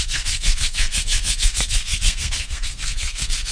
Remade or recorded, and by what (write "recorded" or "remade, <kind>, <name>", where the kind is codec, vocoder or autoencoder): remade, codec, SNAC